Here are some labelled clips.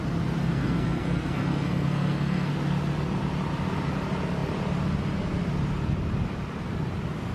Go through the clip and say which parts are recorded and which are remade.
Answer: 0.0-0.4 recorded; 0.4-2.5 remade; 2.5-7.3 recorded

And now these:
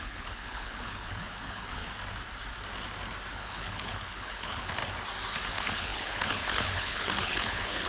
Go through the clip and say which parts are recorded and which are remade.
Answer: 0.0-1.8 remade; 1.8-3.3 recorded; 3.3-4.8 remade; 4.8-5.5 recorded; 5.5-7.9 remade

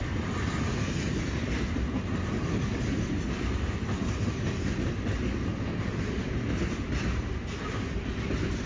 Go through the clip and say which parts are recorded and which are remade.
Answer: 0.0-8.7 recorded

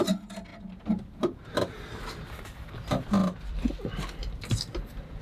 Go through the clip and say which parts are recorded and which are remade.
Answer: 0.0-5.2 recorded

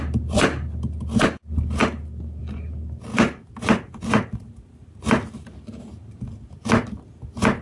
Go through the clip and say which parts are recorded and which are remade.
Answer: 0.0-3.1 recorded; 3.1-6.2 remade; 6.2-7.6 recorded

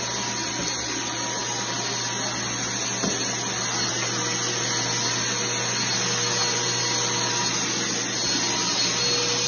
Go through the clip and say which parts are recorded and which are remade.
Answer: 0.0-9.5 recorded